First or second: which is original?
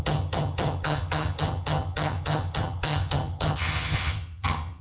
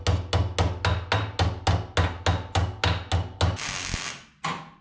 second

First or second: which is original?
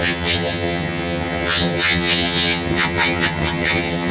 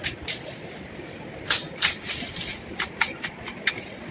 second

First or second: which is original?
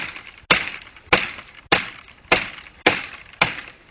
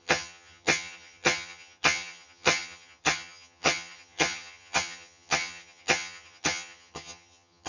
first